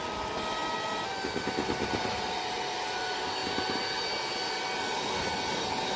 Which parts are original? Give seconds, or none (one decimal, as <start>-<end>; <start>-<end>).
0.0-6.0